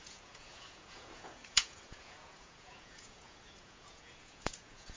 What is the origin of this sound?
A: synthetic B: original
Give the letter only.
A